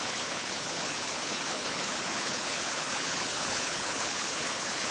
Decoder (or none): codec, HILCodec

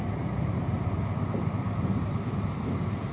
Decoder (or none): none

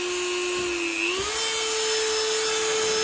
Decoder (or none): none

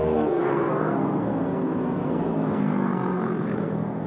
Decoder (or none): codec, SNAC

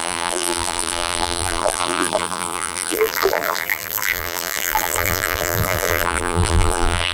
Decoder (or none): vocoder, BigVGAN v2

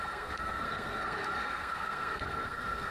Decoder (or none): codec, SNAC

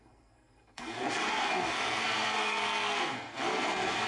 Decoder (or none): codec, SNAC